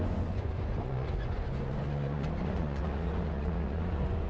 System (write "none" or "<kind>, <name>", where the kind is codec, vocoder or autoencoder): vocoder, Vocos